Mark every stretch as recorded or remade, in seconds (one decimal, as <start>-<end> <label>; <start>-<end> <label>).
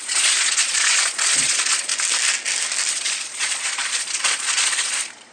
0.0-1.9 remade; 1.9-2.9 recorded; 2.9-5.3 remade